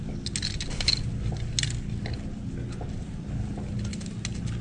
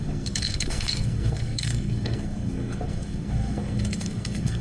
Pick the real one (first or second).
first